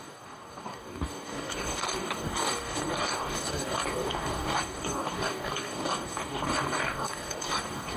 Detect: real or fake fake